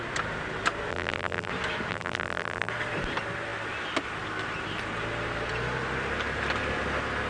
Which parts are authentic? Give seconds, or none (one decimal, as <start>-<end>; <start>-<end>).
0.0-0.9; 1.5-1.9; 2.7-7.3